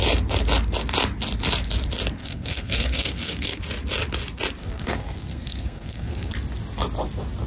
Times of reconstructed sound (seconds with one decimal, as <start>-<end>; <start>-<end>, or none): 2.2-3.6; 4.6-6.3